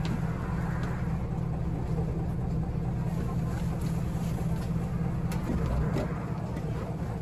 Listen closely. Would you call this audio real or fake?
real